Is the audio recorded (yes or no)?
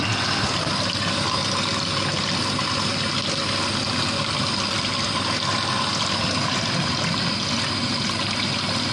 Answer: yes